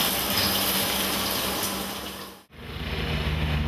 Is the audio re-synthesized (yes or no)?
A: no